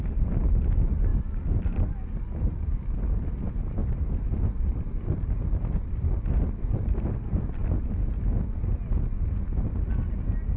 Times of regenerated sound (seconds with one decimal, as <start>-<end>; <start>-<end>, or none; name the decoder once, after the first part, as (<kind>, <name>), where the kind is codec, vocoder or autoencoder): 1.1-1.9 (vocoder, BigVGAN v2); 3.8-5.3